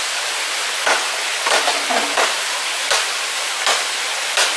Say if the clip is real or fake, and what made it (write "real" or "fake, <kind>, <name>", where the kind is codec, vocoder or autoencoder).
real